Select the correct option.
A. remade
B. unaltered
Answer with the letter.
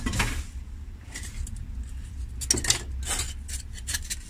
B